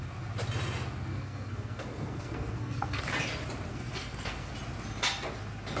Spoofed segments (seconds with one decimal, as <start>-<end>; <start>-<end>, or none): 1.1-3.0; 3.7-4.5